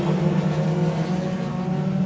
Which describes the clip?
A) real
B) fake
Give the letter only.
A